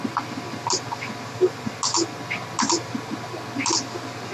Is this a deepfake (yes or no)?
no